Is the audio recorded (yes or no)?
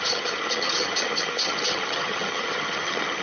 no